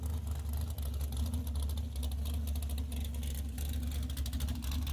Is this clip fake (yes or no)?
no